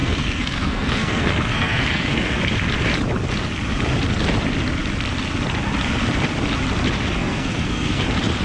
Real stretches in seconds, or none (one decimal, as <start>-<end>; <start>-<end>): 2.4-7.2; 8.0-8.4

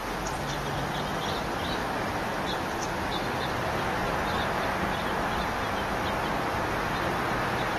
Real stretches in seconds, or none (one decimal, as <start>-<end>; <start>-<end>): 0.0-0.8

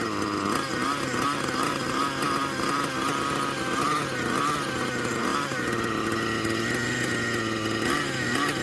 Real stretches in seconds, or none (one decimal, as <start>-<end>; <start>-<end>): 0.0-8.6

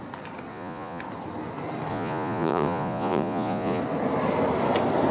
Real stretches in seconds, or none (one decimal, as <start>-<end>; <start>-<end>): 0.0-0.5; 1.0-1.9; 3.8-5.1